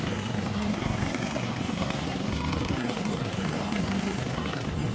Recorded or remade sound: remade